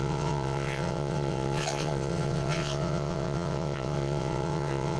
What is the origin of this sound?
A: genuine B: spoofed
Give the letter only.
B